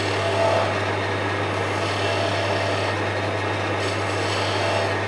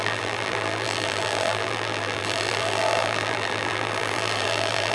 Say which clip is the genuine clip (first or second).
first